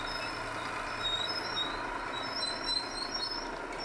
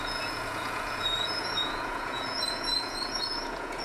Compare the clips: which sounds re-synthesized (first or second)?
second